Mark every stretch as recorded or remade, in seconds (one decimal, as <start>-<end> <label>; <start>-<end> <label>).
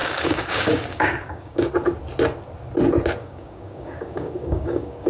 0.0-1.7 remade; 1.7-3.2 recorded; 3.2-5.1 remade